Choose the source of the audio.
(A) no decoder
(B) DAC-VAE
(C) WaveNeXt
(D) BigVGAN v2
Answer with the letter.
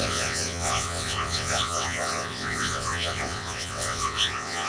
C